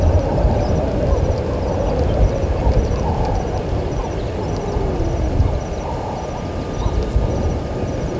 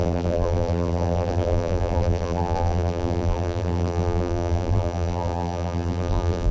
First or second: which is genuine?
first